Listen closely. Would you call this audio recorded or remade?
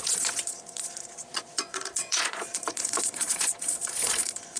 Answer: remade